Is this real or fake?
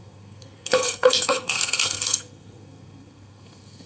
fake